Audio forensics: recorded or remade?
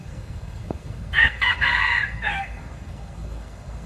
remade